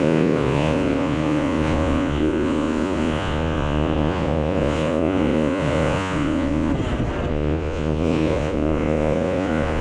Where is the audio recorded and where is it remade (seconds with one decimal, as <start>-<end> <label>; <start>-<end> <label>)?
0.0-6.7 remade; 6.7-7.3 recorded; 7.3-9.8 remade